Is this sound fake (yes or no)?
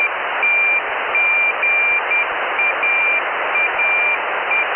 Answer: no